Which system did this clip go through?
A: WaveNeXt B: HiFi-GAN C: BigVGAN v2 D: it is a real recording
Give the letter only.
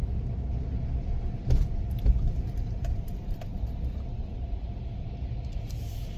C